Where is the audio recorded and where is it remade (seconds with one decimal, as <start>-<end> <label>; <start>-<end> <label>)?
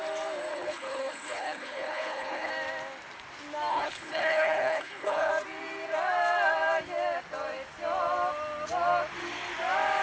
0.0-0.5 recorded; 0.5-2.5 remade; 2.5-3.7 recorded; 3.7-5.3 remade; 5.3-10.0 recorded